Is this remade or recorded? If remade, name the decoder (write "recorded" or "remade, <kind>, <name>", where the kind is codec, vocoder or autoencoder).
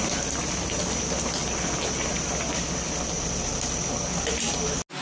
recorded